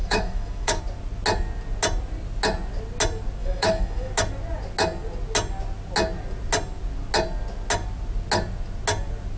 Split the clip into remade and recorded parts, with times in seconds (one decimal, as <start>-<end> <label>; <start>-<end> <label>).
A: 0.0-0.8 remade; 0.8-3.4 recorded; 3.4-4.1 remade; 4.1-9.4 recorded